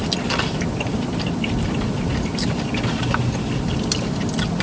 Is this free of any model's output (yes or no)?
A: yes